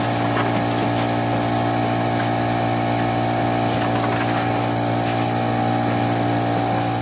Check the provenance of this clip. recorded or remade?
recorded